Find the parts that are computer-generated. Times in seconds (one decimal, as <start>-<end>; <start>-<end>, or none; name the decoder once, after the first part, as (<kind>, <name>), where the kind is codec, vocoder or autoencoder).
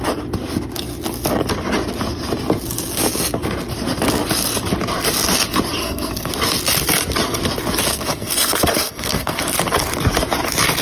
5.8-6.3 (codec, SNAC); 7.9-9.4